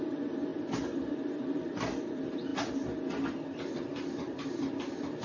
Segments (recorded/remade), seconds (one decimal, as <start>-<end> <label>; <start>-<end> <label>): 0.0-0.5 remade; 0.5-1.2 recorded; 1.2-2.5 remade; 2.5-3.7 recorded; 3.7-5.2 remade